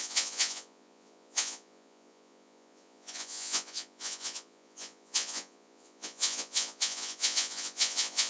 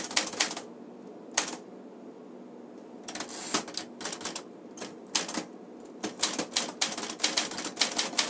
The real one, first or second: second